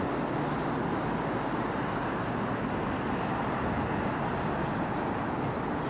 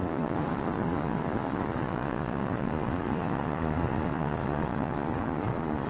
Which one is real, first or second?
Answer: first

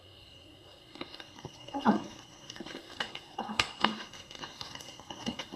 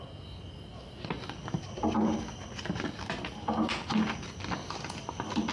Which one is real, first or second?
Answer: second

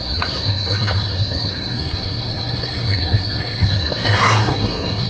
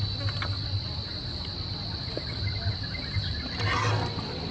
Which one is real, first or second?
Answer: second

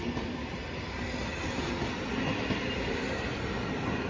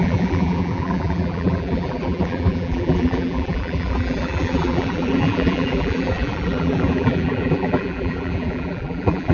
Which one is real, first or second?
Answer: first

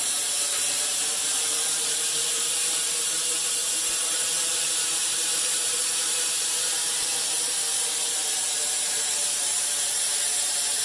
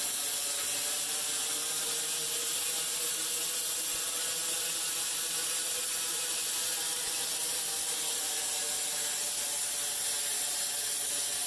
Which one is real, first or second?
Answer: second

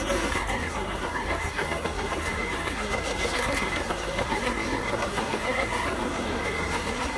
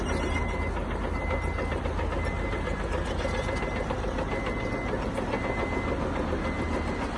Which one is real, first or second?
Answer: second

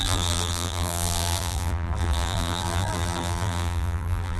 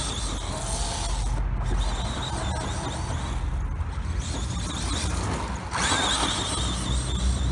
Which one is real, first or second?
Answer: second